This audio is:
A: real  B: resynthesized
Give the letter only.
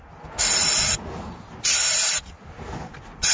A